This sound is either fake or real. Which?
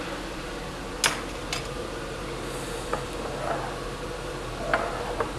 real